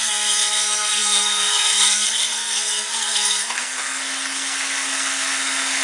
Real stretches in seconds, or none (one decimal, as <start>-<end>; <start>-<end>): none